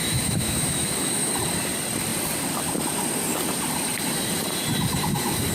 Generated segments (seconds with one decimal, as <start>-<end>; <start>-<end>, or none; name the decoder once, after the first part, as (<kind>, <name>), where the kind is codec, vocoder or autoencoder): 0.0-1.3 (autoencoder, DAC-VAE)